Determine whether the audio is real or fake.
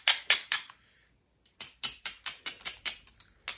real